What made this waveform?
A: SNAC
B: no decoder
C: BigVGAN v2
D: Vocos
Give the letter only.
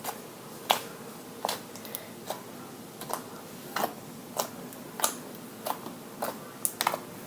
B